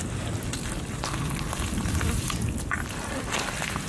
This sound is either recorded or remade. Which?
recorded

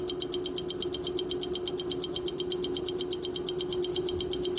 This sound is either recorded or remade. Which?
recorded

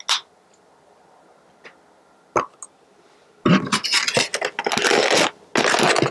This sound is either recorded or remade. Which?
recorded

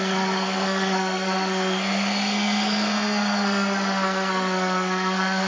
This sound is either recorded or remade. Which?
remade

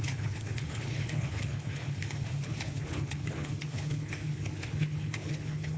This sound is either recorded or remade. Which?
remade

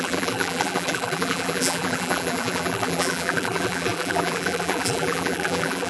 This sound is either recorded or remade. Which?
remade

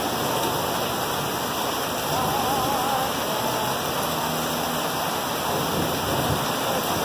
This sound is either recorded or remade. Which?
recorded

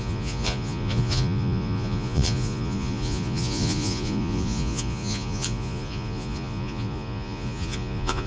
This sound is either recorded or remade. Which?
remade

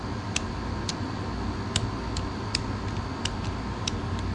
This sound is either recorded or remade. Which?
recorded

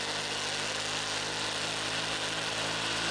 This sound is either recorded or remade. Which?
recorded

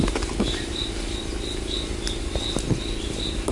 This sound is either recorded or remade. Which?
recorded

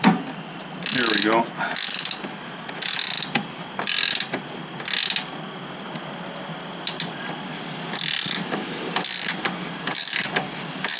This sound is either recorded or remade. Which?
recorded